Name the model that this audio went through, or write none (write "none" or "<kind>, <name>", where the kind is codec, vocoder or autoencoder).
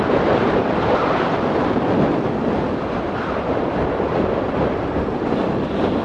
vocoder, BigVGAN v2